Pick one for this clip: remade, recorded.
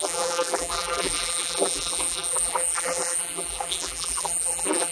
remade